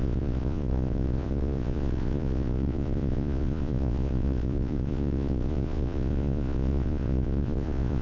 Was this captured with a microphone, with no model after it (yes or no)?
no